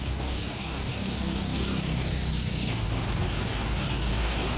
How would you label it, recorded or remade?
remade